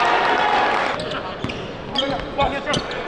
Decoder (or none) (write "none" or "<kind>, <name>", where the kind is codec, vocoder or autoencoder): none